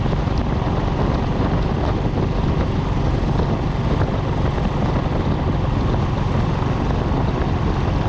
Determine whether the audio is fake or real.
real